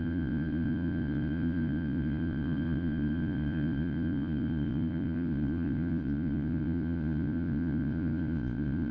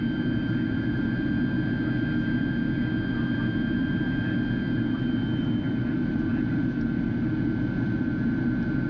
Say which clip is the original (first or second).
second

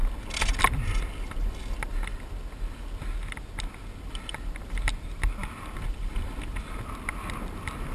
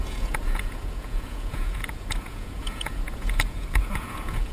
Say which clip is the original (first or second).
first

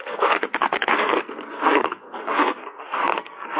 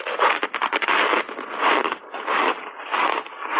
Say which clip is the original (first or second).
second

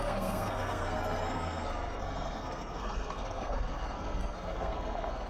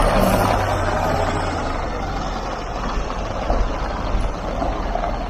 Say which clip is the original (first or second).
second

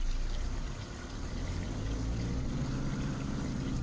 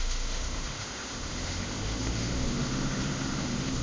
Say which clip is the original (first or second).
first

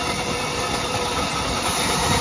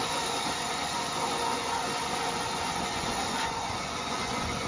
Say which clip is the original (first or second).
first